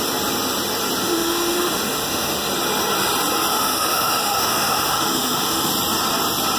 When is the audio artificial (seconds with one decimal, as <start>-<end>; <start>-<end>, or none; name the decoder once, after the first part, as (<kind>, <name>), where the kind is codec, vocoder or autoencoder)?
1.0-2.5 (autoencoder, DAC-VAE); 3.5-5.7